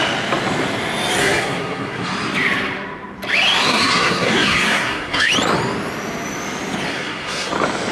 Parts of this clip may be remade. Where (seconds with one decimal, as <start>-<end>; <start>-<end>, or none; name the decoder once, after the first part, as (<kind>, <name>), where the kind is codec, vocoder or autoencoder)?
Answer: 1.2-2.1 (codec, SNAC); 3.7-5.3; 6.9-7.5